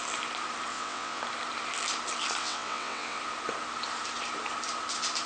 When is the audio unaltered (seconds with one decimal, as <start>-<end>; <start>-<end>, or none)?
0.0-0.7; 1.2-2.4; 3.2-5.3